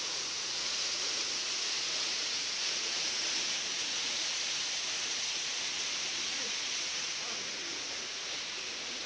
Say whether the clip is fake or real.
fake